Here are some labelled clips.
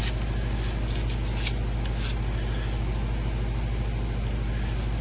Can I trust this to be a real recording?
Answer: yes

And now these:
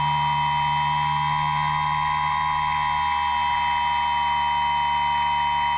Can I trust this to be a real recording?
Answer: yes